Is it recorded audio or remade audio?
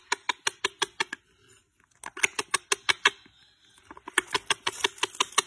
recorded